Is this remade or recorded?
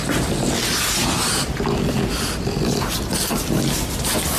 recorded